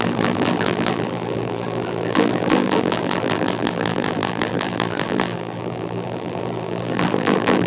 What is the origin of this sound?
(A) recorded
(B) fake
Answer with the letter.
B